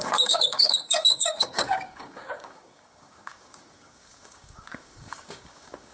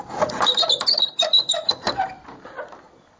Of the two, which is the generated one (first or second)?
first